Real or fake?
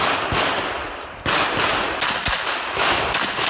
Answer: real